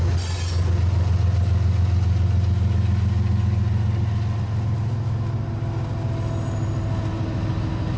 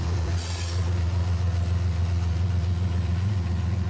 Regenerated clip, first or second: second